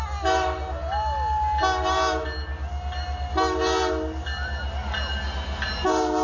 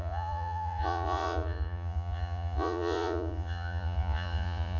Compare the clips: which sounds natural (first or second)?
first